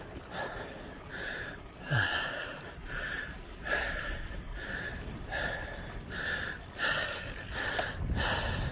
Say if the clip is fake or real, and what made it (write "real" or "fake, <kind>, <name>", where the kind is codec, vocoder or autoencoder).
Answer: fake, vocoder, BigVGAN v2